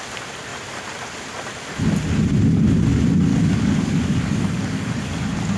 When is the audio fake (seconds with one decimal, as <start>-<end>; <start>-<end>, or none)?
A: 3.3-4.9